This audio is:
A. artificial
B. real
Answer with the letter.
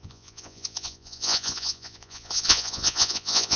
A